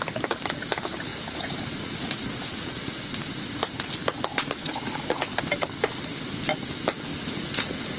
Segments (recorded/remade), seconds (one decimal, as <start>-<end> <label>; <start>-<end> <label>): 0.0-1.1 recorded; 1.1-3.0 remade; 3.0-4.3 recorded; 4.3-5.3 remade; 5.3-7.1 recorded; 7.1-8.0 remade